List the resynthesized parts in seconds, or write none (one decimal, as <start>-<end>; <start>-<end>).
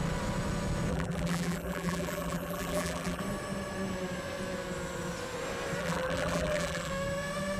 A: 0.9-3.2; 5.8-6.9